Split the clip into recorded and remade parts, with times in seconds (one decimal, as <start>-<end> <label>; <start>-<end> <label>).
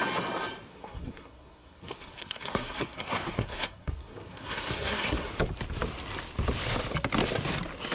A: 0.0-0.7 recorded; 0.7-5.3 remade; 5.3-7.9 recorded